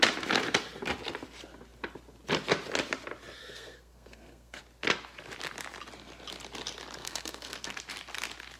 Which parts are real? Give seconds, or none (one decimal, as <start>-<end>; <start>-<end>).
0.0-3.4; 4.6-7.0; 7.7-8.6

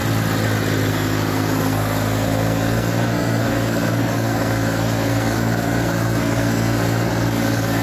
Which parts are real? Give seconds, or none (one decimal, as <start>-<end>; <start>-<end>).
0.0-0.9

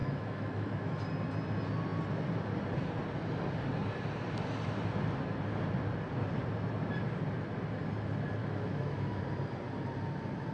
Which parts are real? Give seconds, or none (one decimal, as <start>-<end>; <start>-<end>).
1.0-8.4; 9.2-10.5

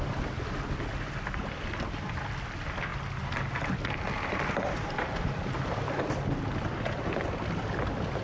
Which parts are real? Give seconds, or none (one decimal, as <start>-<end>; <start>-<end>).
0.0-8.2

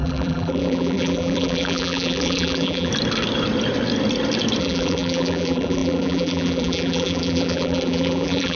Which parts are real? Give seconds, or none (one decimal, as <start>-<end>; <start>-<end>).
2.9-4.6

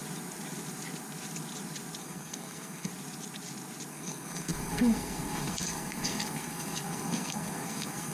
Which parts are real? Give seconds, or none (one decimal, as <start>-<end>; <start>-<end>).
0.0-2.0; 2.9-3.9